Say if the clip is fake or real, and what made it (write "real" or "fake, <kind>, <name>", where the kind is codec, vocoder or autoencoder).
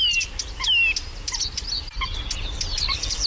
real